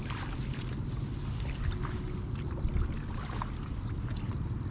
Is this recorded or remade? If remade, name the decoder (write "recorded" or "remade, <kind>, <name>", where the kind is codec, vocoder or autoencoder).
recorded